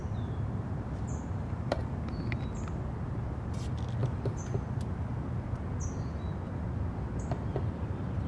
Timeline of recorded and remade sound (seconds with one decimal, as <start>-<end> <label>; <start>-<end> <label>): 0.0-1.8 remade; 1.8-8.3 recorded